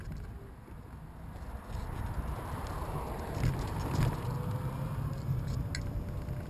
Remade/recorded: recorded